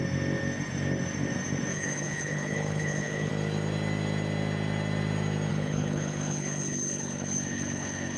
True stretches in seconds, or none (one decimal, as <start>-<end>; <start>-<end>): 0.0-1.7; 3.3-5.5